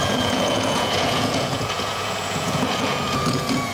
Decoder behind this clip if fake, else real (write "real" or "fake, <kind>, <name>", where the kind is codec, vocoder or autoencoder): fake, vocoder, Vocos